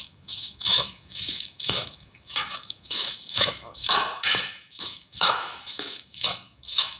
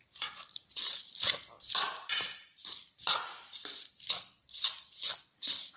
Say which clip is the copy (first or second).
first